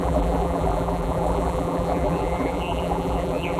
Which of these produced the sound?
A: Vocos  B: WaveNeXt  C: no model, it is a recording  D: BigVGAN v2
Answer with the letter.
D